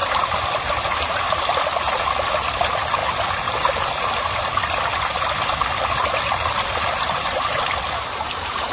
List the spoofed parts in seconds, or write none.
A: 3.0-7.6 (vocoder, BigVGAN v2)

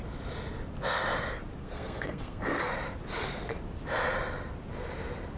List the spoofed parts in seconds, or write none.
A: 1.6-2.7 (codec, SNAC)